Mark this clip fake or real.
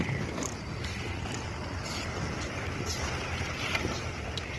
real